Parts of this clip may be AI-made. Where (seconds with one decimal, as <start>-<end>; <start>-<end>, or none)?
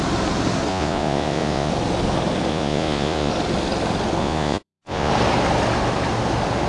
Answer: 0.7-1.7; 2.5-3.3; 4.2-5.1